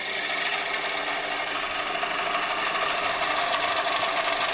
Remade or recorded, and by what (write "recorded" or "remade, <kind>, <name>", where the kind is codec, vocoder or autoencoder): recorded